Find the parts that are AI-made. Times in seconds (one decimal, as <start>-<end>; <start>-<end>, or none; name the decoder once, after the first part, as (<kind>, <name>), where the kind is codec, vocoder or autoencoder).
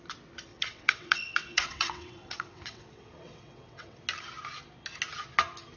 0.5-4.0 (vocoder, WaveNeXt)